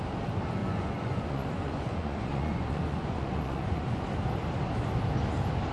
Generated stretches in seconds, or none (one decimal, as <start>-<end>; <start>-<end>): 0.6-4.0

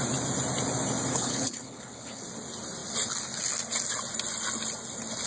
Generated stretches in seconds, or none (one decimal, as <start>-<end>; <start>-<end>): 1.1-2.2

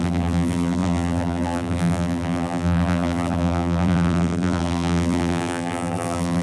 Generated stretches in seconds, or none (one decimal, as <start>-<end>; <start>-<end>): 0.0-6.4

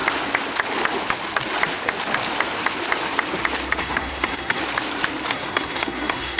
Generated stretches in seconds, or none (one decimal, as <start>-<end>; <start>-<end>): 3.8-4.6; 5.3-6.4

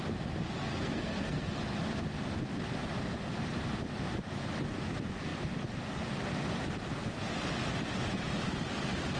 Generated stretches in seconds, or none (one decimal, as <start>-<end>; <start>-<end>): 0.6-1.5